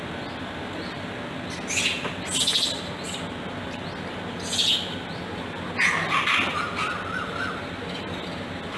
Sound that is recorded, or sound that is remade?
recorded